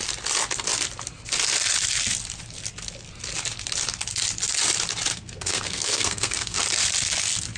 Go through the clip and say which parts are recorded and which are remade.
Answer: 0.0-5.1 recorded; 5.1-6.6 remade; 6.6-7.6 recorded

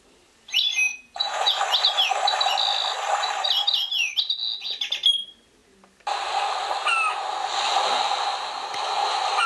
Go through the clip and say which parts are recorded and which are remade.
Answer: 0.0-0.9 recorded; 0.9-1.6 remade; 1.6-9.5 recorded

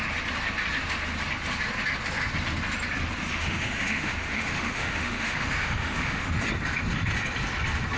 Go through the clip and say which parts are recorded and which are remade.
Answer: 0.0-3.3 recorded; 3.3-6.4 remade; 6.4-8.0 recorded